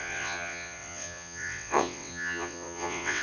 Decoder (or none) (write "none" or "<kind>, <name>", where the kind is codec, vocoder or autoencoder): vocoder, WaveNeXt